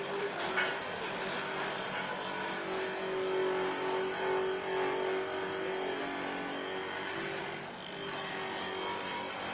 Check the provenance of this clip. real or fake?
real